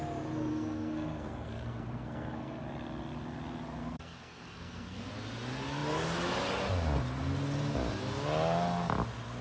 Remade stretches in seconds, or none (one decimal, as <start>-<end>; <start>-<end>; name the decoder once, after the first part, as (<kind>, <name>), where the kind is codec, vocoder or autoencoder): 0.5-2.6 (codec, SNAC); 3.8-5.1